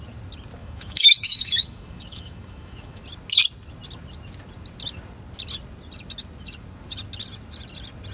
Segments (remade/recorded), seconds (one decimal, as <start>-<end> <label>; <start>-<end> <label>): 0.0-0.6 recorded; 0.6-3.0 remade; 3.0-8.1 recorded